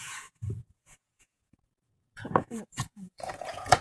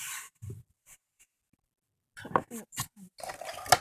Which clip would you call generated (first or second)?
first